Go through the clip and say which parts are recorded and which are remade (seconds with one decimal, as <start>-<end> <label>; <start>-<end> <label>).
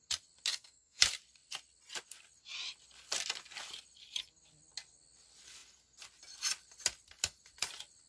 0.0-0.5 recorded; 0.5-1.0 remade; 1.0-8.1 recorded